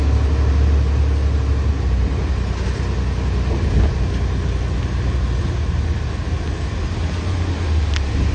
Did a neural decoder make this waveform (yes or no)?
no